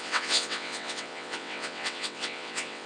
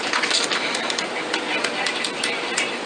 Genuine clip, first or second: second